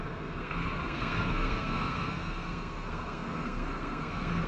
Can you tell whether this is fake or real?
fake